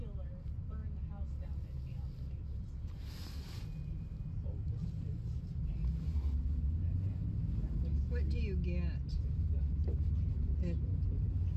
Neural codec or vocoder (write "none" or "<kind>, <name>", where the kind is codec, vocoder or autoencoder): none